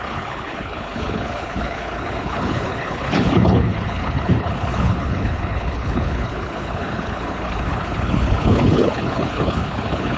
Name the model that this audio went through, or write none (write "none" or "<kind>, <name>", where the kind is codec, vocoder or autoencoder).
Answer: codec, HILCodec